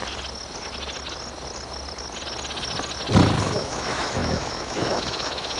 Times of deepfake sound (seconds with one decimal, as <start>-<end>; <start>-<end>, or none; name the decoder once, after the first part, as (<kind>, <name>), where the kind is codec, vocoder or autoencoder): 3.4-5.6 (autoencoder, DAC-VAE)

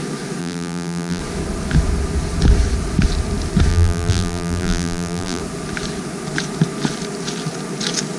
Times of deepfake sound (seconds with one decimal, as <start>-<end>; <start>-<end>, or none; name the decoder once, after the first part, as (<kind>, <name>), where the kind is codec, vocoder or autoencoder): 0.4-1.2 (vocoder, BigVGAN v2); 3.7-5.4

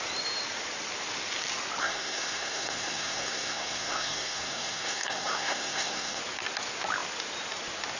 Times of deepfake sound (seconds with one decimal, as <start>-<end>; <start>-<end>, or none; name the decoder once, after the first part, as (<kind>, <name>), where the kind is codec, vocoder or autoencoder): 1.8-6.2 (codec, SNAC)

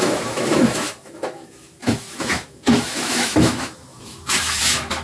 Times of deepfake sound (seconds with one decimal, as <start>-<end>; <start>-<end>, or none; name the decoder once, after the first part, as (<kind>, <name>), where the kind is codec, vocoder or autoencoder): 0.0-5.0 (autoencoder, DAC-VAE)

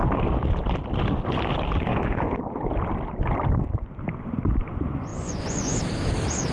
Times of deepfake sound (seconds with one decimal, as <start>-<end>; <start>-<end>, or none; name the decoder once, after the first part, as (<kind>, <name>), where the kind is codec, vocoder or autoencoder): 5.1-5.8 (vocoder, Vocos)